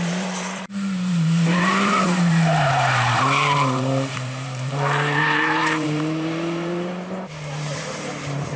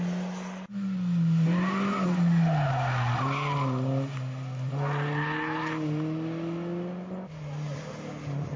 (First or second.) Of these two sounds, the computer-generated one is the first